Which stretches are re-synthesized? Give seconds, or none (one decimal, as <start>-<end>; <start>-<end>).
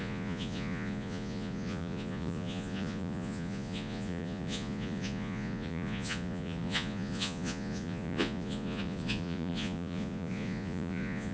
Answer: 0.0-11.3